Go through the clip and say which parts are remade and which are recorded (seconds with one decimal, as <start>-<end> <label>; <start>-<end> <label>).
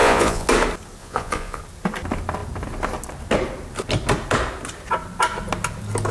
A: 0.0-0.5 remade; 0.5-1.0 recorded; 1.0-1.6 remade; 1.6-6.1 recorded